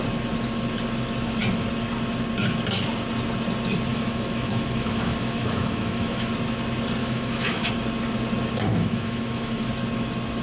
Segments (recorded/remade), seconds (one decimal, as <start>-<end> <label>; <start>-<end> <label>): 0.0-3.9 recorded; 3.9-6.3 remade; 6.3-7.0 recorded; 7.0-7.7 remade; 7.7-8.7 recorded; 8.7-9.7 remade; 9.7-10.4 recorded

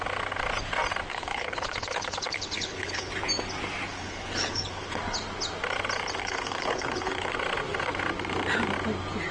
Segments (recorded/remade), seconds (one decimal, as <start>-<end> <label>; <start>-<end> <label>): 0.0-1.1 recorded; 1.1-3.2 remade; 3.2-3.9 recorded; 3.9-5.0 remade; 5.0-6.2 recorded; 6.2-7.3 remade; 7.3-9.3 recorded

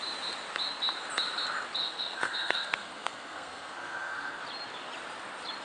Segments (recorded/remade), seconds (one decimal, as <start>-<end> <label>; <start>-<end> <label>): 0.0-1.8 recorded; 1.8-4.4 remade; 4.4-5.6 recorded